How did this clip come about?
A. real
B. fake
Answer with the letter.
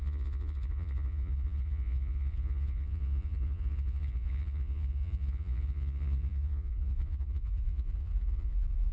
B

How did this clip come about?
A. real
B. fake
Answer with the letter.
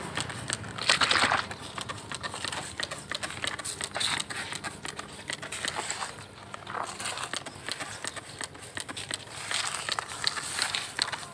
A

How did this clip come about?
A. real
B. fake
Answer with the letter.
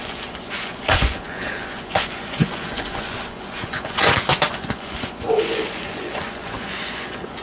B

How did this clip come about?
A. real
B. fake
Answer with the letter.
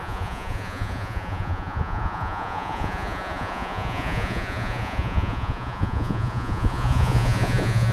B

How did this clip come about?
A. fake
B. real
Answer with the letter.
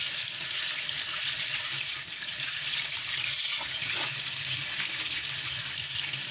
B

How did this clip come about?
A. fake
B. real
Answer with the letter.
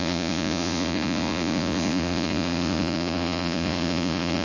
A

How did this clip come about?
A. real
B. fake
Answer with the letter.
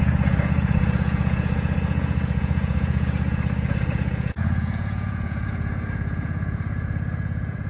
B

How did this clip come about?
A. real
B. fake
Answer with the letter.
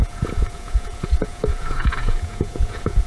B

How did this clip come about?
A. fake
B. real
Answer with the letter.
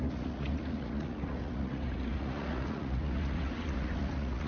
A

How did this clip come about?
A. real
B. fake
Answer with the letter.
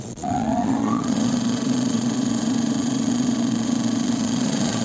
B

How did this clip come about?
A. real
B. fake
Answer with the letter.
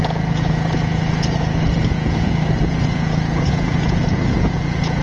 B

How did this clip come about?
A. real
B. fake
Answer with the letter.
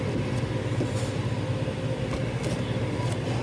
A